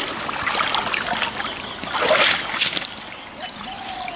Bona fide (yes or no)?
yes